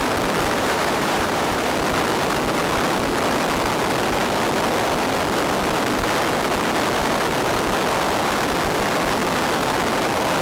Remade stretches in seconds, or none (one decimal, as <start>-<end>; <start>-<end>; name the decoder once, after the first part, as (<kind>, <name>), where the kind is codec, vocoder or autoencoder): 0.6-1.7 (vocoder, BigVGAN v2)